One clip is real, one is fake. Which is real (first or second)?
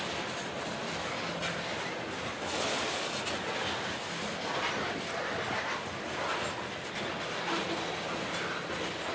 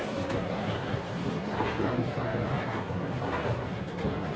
first